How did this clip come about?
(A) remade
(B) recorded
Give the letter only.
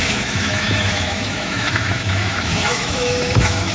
A